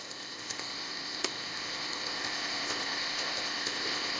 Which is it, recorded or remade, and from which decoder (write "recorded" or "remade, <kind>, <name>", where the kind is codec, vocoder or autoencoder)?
remade, codec, ZipCodec